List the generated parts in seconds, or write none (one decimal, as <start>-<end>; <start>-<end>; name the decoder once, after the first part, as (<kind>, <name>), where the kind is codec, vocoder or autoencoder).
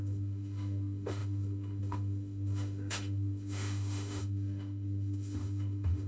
0.0-6.1 (autoencoder, DAC-VAE)